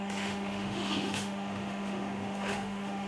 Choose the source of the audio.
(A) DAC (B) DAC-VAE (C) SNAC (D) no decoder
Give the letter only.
B